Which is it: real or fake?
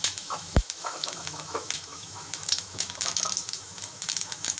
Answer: fake